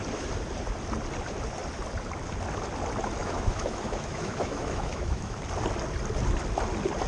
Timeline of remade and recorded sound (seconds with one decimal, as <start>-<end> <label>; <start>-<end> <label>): 0.0-3.2 recorded; 3.2-5.4 remade; 5.4-7.1 recorded